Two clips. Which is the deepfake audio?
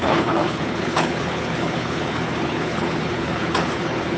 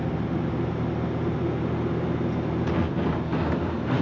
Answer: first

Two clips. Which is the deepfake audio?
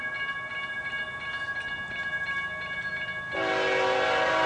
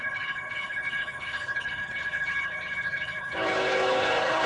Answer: second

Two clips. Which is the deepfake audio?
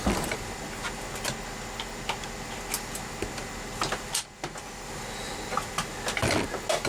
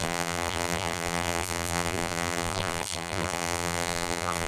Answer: second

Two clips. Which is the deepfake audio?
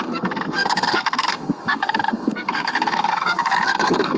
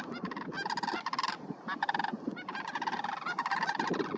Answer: first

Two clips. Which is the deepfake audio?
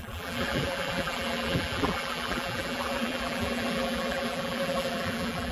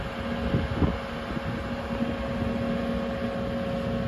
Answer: first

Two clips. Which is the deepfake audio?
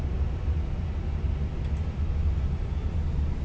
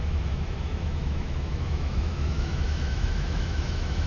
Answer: second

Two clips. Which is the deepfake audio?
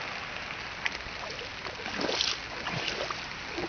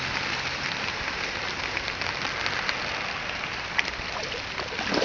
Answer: second